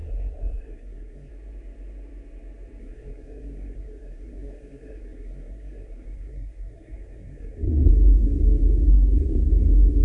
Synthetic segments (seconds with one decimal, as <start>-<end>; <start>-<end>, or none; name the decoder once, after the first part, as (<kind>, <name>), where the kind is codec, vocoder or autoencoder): 0.0-1.3 (codec, SNAC); 2.8-7.9; 8.9-9.5